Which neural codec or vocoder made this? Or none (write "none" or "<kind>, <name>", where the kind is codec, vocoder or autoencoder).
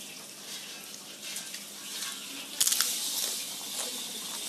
none